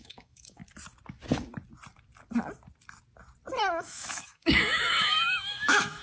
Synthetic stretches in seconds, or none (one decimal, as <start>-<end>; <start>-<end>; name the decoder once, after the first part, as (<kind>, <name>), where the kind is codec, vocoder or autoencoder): 0.0-0.6 (autoencoder, DAC-VAE); 3.6-6.0